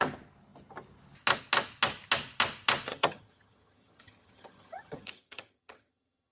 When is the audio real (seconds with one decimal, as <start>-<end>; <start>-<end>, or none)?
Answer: 0.0-2.9